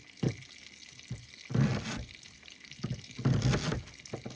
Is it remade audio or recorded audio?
recorded